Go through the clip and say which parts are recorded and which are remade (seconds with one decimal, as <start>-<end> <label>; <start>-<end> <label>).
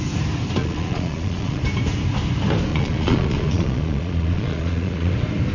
0.0-0.6 recorded; 0.6-1.6 remade; 1.6-2.7 recorded; 2.7-5.1 remade; 5.1-5.5 recorded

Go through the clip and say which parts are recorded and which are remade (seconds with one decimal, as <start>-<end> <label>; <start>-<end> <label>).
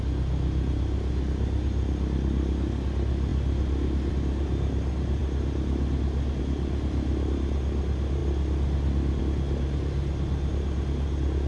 0.0-11.5 recorded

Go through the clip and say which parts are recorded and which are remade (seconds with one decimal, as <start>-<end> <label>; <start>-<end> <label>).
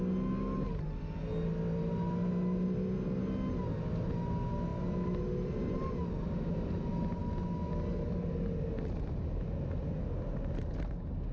0.0-11.3 recorded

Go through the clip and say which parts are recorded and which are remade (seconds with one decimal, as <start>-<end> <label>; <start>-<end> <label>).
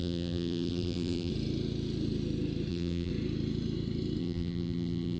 0.0-1.3 remade; 1.3-2.7 recorded; 2.7-3.1 remade; 3.1-4.2 recorded; 4.2-5.2 remade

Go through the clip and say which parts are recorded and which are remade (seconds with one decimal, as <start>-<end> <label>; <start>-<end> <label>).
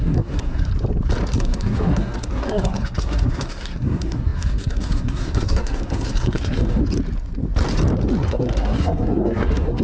0.0-0.7 remade; 0.7-1.4 recorded; 1.4-6.8 remade; 6.8-8.3 recorded; 8.3-9.8 remade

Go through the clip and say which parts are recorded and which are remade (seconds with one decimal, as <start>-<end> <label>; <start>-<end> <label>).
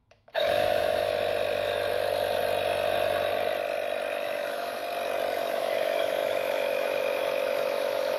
0.0-1.1 remade; 1.1-4.1 recorded; 4.1-4.8 remade; 4.8-5.4 recorded; 5.4-8.2 remade